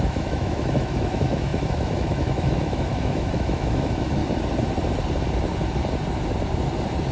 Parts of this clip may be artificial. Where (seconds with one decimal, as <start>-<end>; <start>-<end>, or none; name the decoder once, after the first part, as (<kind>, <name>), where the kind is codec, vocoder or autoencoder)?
0.0-4.2 (autoencoder, DAC-VAE)